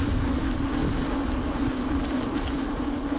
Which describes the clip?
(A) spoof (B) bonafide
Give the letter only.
B